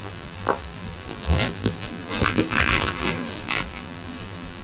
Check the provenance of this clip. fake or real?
fake